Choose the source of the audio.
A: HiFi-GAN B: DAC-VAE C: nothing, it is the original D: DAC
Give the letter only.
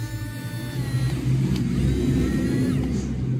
C